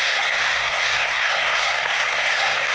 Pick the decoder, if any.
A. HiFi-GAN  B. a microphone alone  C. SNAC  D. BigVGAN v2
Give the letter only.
C